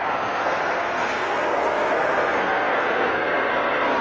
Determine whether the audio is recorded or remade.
remade